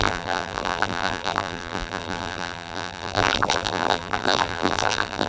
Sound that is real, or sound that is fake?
fake